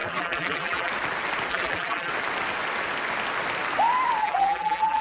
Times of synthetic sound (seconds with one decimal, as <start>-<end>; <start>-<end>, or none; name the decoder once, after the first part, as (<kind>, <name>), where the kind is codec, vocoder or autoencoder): 0.0-0.9 (vocoder, BigVGAN v2); 1.5-2.1; 4.2-5.0